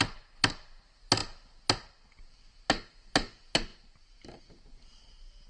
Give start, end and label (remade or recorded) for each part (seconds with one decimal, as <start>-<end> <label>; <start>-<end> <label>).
0.0-5.5 recorded